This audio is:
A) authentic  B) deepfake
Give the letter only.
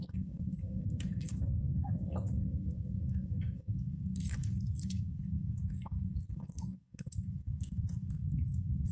B